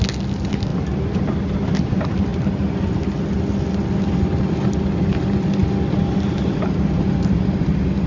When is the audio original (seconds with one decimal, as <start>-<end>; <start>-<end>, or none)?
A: 0.0-8.1